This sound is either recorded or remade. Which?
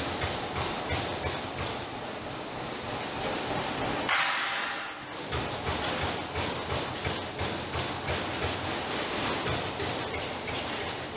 recorded